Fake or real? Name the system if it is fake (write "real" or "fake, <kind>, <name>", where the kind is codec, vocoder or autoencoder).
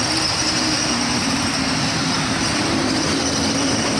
fake, vocoder, BigVGAN v2